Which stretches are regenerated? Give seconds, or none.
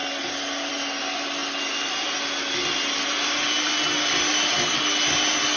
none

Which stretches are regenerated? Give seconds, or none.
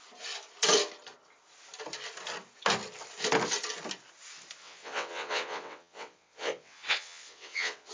4.6-7.9 (vocoder, WaveNeXt)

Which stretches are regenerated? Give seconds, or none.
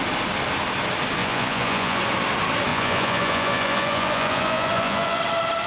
1.2-2.0 (vocoder, Vocos); 2.7-5.2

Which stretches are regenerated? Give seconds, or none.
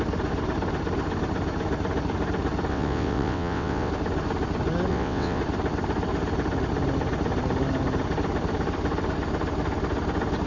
2.7-3.9 (vocoder, WaveNeXt); 4.9-5.4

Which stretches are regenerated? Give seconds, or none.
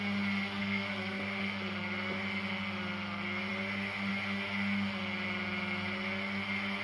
0.6-1.4 (codec, SNAC)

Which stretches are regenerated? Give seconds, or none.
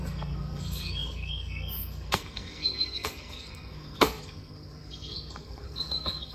0.0-6.3 (codec, SNAC)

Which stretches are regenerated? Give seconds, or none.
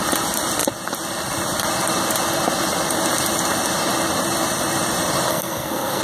5.3-6.0 (codec, SNAC)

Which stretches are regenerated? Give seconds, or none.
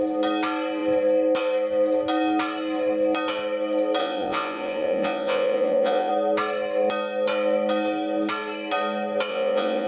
4.0-6.1 (vocoder, Vocos); 9.3-9.9